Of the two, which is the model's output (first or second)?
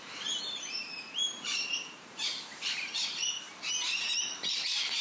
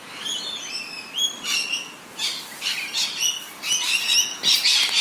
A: first